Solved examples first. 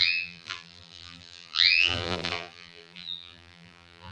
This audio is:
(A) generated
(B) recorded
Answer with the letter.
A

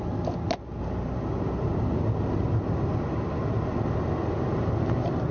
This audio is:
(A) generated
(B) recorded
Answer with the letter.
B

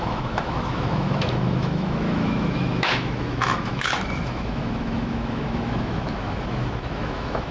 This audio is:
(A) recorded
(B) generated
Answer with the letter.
B